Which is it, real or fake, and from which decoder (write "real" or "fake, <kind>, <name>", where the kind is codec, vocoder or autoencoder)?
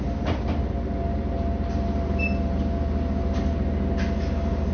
real